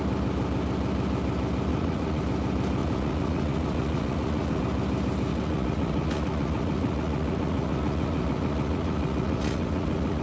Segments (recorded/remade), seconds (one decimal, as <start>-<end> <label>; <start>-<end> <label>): 0.0-1.7 recorded; 1.7-2.2 remade; 2.2-2.8 recorded; 2.8-4.6 remade; 4.6-5.3 recorded; 5.3-10.2 remade